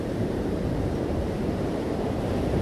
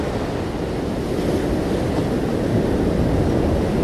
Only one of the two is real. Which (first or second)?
second